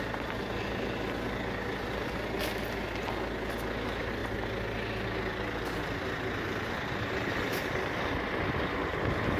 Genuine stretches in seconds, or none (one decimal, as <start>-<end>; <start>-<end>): 0.0-9.4